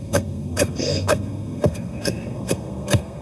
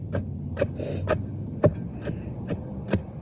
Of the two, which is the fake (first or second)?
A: first